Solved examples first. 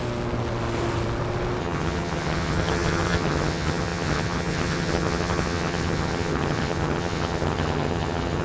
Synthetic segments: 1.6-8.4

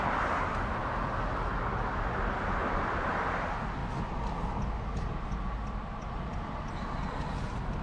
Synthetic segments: none

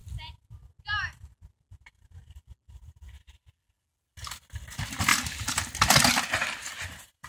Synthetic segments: none

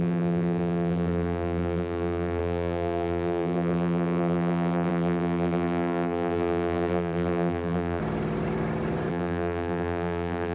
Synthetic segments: 0.0-8.0; 9.1-10.5

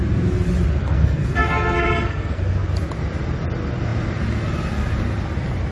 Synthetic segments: 0.8-2.4

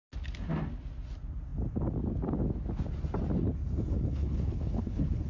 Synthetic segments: 3.9-5.3

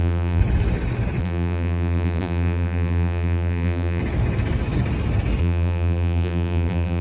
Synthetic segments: 0.0-0.4; 1.2-4.0; 5.4-7.0

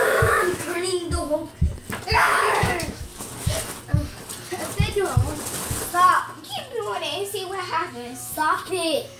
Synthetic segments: 0.0-1.4; 2.1-3.1; 7.9-9.2